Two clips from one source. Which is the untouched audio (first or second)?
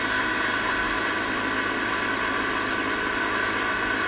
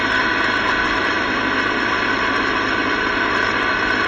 first